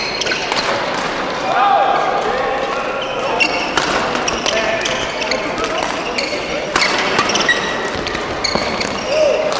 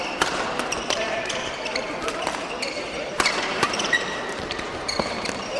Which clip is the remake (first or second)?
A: second